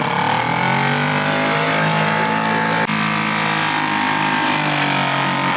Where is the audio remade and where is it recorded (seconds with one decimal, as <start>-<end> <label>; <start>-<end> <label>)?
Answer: 0.0-5.6 recorded